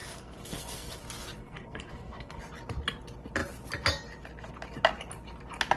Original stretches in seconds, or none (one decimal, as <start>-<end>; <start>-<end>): 1.0-1.4; 2.4-5.8